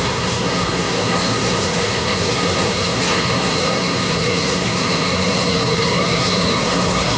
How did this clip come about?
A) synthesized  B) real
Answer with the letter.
A